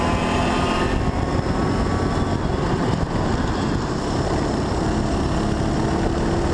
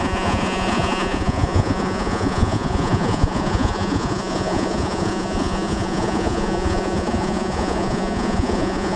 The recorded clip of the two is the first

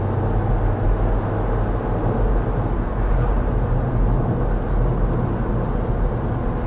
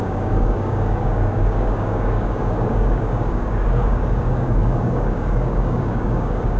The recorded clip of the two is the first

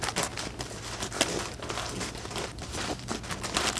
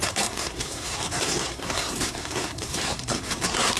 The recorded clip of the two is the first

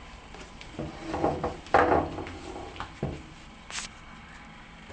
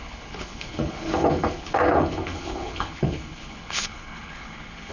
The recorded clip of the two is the first